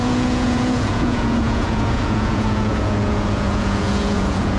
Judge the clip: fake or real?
fake